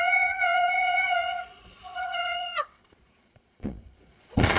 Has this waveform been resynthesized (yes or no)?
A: yes